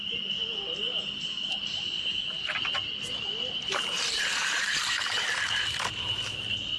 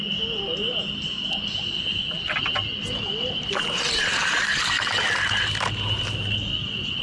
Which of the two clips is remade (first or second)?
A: first